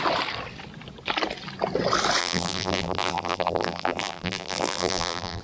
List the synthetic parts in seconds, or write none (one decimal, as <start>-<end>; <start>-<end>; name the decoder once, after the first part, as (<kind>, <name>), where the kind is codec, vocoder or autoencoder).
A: 2.2-5.4 (vocoder, BigVGAN v2)